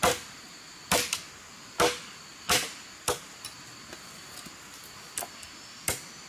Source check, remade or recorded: recorded